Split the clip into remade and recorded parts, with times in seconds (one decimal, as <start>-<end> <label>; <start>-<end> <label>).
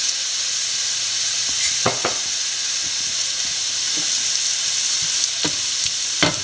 0.0-3.6 remade; 3.6-6.4 recorded